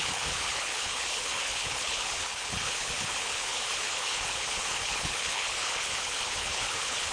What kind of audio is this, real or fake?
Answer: fake